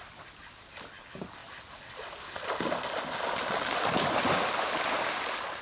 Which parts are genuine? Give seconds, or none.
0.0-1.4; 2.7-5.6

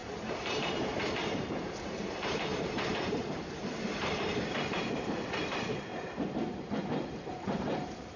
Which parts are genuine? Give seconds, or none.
5.9-7.2

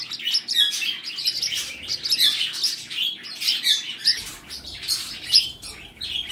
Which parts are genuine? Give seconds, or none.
0.0-3.3; 5.7-6.3

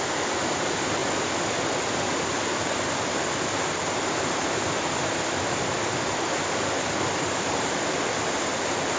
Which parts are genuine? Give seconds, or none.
1.0-6.3